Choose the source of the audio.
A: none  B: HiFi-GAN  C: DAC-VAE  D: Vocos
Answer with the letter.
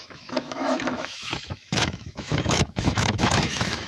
C